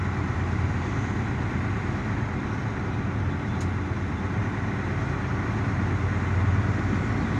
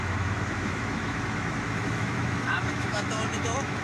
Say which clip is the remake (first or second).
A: second